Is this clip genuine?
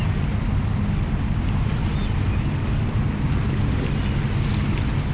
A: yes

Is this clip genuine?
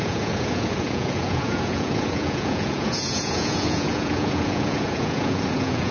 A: no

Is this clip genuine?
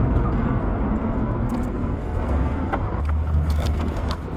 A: no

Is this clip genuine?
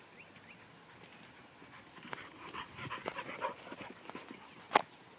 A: yes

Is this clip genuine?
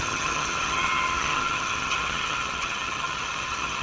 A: no